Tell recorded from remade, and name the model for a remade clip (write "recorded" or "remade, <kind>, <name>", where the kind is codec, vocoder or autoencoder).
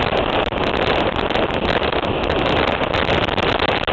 recorded